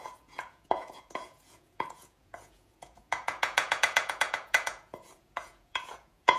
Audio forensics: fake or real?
fake